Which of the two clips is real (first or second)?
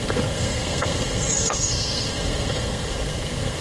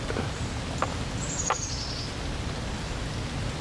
second